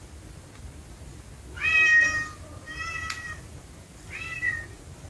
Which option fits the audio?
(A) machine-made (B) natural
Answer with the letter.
B